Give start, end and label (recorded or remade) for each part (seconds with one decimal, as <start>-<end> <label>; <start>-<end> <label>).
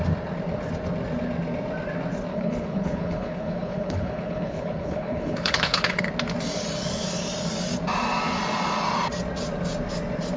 0.0-2.3 recorded; 2.3-6.1 remade; 6.1-10.4 recorded